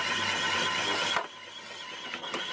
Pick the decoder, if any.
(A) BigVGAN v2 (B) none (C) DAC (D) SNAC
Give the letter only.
B